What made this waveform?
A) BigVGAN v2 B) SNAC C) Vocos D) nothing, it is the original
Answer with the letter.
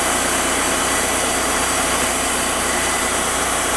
A